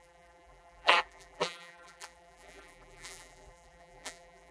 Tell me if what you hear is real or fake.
fake